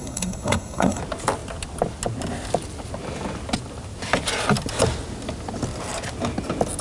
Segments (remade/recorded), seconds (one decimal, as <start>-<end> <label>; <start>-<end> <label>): 0.0-1.0 remade; 1.0-6.8 recorded